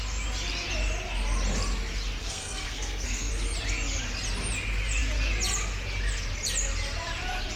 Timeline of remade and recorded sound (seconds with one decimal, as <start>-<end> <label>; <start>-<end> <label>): 0.0-2.2 recorded; 2.2-3.3 remade; 3.3-7.6 recorded

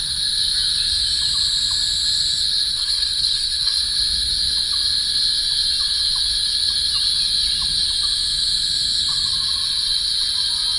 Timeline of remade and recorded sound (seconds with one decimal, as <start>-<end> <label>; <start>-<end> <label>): 0.0-2.7 recorded; 2.7-3.8 remade; 3.8-10.8 recorded

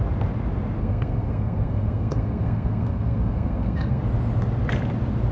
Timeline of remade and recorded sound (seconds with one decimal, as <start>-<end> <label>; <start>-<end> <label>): 0.0-0.8 recorded; 0.8-4.0 remade; 4.0-5.3 recorded

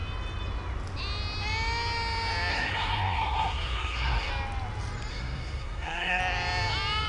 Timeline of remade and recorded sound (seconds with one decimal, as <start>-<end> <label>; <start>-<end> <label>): 0.0-2.5 recorded; 2.5-4.3 remade; 4.3-5.1 recorded; 5.1-6.2 remade; 6.2-7.1 recorded

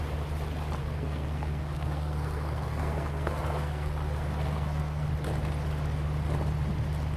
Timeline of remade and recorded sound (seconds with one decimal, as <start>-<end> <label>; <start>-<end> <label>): 0.0-0.8 recorded; 0.8-5.1 remade; 5.1-7.2 recorded

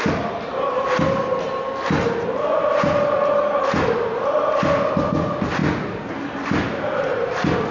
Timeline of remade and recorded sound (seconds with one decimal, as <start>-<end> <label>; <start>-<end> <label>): 0.0-7.7 recorded

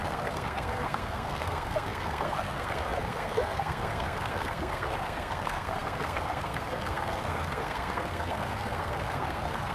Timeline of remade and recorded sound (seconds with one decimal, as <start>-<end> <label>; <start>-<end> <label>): 0.0-9.7 remade